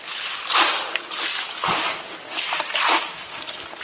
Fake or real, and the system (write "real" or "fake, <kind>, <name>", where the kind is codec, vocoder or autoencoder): real